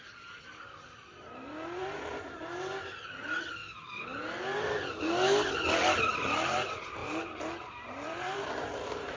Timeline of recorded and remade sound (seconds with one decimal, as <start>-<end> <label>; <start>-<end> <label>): 0.0-3.6 remade; 3.6-6.0 recorded; 6.0-7.0 remade; 7.0-7.7 recorded; 7.7-9.2 remade

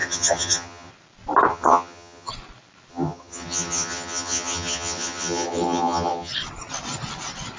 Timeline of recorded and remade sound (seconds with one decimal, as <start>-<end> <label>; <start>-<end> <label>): 0.0-0.9 remade; 0.9-1.5 recorded; 1.5-2.3 remade; 2.3-2.9 recorded; 2.9-6.3 remade; 6.3-7.6 recorded

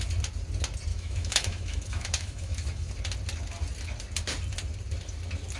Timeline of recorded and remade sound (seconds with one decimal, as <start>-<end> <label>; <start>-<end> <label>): 0.0-0.9 recorded; 0.9-2.9 remade; 2.9-5.6 recorded

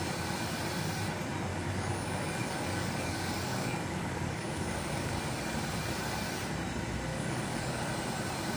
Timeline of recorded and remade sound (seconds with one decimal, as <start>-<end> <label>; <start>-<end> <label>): 0.0-1.5 recorded; 1.5-5.2 remade; 5.2-7.1 recorded; 7.1-7.9 remade; 7.9-8.6 recorded

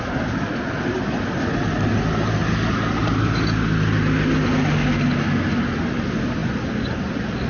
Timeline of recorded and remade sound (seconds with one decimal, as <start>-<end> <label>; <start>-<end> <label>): 0.0-7.5 recorded

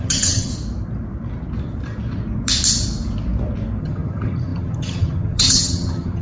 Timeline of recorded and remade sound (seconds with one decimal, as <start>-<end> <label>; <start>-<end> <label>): 0.0-0.5 remade; 0.5-3.8 recorded; 3.8-6.2 remade

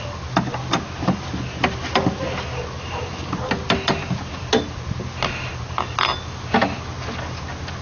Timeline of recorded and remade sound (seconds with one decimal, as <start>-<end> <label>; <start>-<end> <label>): 0.0-7.8 recorded

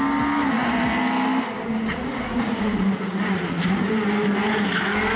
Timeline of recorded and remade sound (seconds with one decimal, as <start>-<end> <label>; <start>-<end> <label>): 0.0-1.9 recorded; 1.9-3.9 remade; 3.9-5.2 recorded